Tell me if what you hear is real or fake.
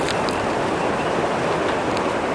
real